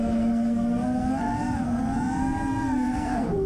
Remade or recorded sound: remade